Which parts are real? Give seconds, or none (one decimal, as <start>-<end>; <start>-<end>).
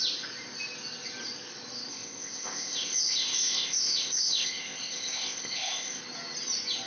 0.0-1.9; 6.0-6.9